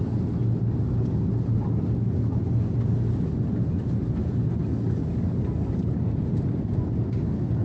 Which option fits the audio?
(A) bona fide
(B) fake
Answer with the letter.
A